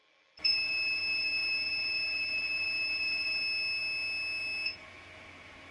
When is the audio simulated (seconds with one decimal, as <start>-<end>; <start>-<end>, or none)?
0.0-3.4